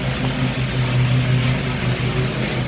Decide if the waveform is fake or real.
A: real